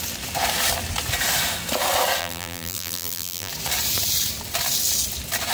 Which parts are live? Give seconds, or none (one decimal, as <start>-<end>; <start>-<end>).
0.0-2.2; 3.5-5.5